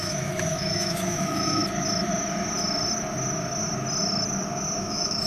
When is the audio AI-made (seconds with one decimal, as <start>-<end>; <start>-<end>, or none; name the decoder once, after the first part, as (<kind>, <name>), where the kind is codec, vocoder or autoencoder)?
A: 0.0-1.6 (autoencoder, DAC-VAE); 4.8-5.3